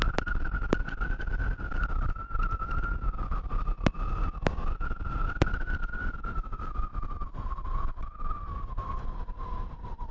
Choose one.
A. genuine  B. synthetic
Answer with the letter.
A